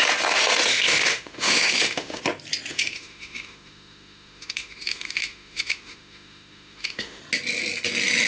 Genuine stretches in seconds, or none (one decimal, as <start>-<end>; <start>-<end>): 0.0-0.7; 2.2-2.7; 7.2-8.3

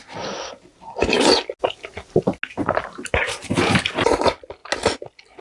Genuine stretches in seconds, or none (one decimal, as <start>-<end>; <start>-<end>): 0.7-3.9; 4.6-5.4

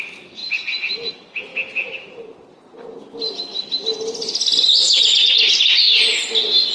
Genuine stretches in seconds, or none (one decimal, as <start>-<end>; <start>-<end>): 0.0-6.7

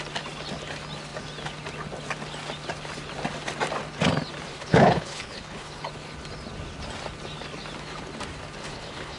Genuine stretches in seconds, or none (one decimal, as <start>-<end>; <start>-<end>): 0.0-4.5; 5.8-8.6